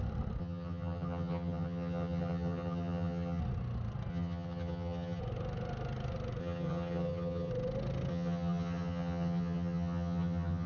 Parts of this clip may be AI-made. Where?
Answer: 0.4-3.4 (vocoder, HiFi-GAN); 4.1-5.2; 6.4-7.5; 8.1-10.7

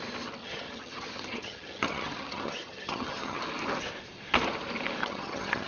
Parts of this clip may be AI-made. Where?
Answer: 0.4-3.4 (vocoder, HiFi-GAN); 5.0-5.7

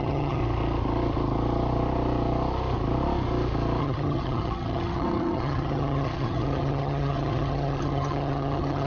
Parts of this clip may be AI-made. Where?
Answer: 0.0-0.4 (vocoder, HiFi-GAN); 3.8-8.9

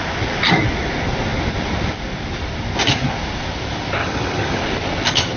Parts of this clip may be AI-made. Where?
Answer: 4.0-4.6 (vocoder, HiFi-GAN)

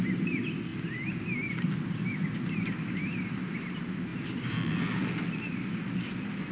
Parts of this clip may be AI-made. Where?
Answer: none

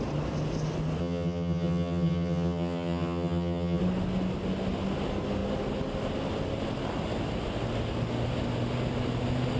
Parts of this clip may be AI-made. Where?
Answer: 1.0-3.8 (vocoder, HiFi-GAN)

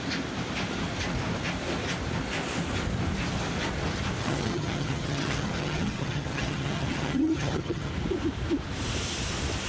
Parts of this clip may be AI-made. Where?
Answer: 4.2-7.9 (vocoder, HiFi-GAN)

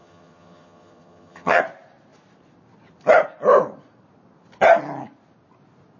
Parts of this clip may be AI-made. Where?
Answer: 0.0-1.6 (vocoder, HiFi-GAN)